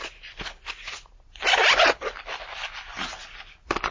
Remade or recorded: recorded